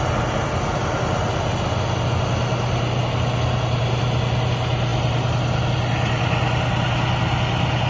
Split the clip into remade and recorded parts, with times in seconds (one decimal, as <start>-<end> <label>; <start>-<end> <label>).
0.0-7.9 recorded